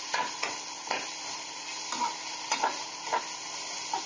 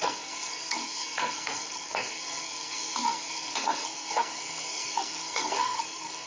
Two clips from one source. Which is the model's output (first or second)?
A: second